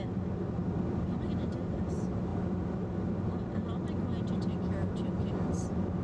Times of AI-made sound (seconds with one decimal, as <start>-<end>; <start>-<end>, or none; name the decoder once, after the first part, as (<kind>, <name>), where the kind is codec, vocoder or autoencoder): none